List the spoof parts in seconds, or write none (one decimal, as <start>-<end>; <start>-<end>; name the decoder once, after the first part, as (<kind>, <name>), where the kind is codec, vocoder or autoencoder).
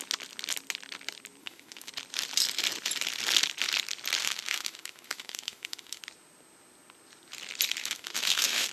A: 1.4-1.9 (autoencoder, DAC-VAE); 4.2-6.0; 7.8-8.7